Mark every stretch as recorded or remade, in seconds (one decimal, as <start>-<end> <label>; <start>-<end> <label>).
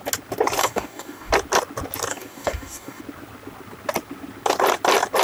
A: 0.0-0.6 recorded; 0.6-1.3 remade; 1.3-2.1 recorded; 2.1-3.0 remade; 3.0-5.2 recorded